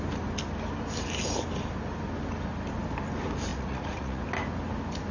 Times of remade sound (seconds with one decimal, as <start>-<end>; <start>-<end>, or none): 3.5-4.2